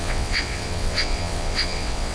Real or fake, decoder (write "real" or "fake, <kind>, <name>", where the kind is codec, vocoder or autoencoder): fake, vocoder, WaveNeXt